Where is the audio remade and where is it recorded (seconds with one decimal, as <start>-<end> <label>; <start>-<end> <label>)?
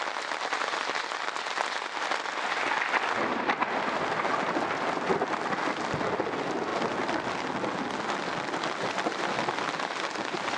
0.0-10.6 recorded